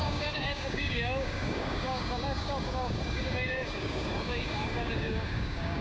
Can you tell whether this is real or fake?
fake